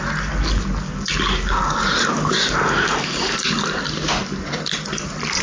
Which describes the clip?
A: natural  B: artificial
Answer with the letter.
A